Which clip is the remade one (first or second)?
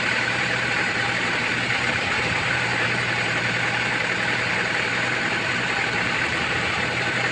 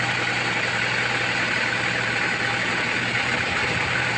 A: first